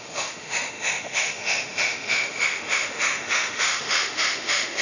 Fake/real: fake